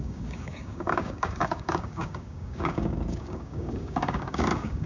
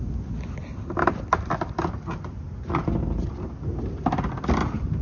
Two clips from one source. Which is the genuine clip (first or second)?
second